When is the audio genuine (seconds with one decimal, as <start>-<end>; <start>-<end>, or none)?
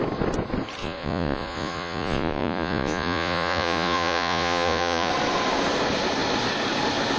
0.0-0.8; 5.1-7.2